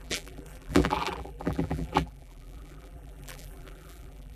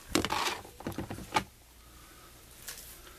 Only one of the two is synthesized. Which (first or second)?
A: first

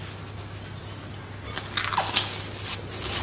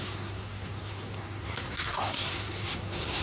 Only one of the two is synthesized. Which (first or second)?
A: second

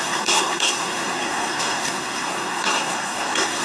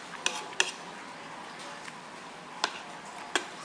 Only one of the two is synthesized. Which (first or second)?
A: first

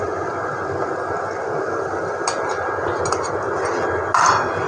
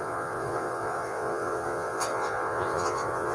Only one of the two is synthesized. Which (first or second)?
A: second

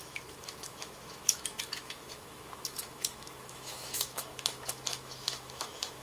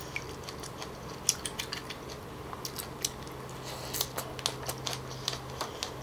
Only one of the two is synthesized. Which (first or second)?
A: first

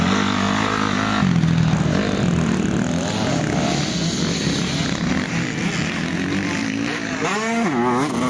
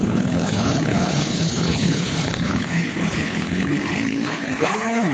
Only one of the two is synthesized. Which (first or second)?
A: second